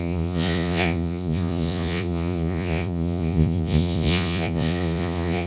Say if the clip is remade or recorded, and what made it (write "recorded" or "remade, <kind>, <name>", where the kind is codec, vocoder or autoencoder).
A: remade, vocoder, Vocos